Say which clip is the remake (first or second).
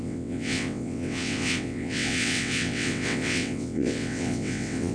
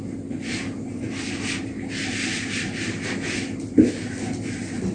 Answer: first